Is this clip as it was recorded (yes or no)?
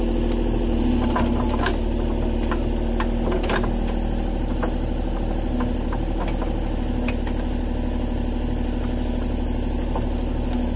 yes